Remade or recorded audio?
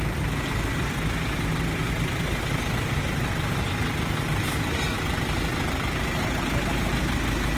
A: recorded